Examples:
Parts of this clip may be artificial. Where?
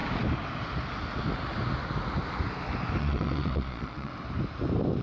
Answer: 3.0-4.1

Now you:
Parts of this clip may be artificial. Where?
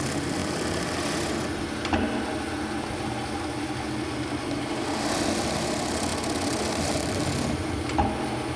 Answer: none